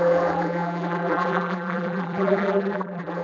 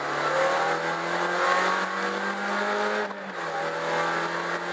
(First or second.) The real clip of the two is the second